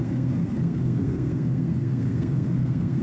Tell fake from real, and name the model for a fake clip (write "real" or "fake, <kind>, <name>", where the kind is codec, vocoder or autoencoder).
fake, codec, SNAC